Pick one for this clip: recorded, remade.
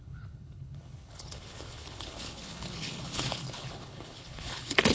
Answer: remade